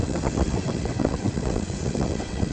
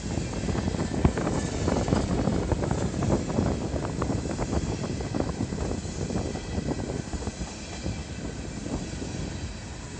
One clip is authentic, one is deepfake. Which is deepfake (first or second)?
first